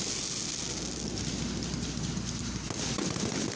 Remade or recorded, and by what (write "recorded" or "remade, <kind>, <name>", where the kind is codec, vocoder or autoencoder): recorded